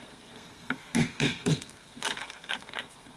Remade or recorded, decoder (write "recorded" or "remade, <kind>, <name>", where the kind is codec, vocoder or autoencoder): remade, codec, SNAC